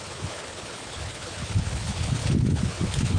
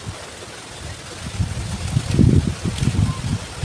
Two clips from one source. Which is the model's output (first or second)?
first